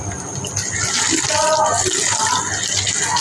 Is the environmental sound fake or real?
real